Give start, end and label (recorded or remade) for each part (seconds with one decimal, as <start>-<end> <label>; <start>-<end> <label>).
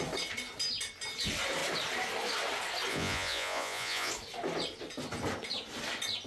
0.0-2.9 recorded; 2.9-4.1 remade; 4.1-6.3 recorded